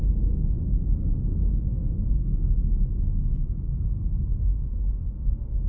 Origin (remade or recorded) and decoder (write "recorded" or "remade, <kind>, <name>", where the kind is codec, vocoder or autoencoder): remade, codec, SNAC